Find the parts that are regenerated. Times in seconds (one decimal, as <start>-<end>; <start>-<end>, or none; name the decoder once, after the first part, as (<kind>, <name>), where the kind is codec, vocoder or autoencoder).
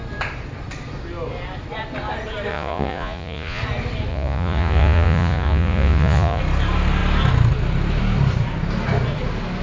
2.5-3.6 (vocoder, Vocos); 4.1-6.4